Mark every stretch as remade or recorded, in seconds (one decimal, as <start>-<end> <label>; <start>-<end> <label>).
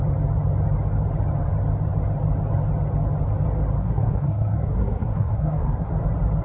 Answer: 0.0-3.8 recorded; 3.8-5.9 remade; 5.9-6.4 recorded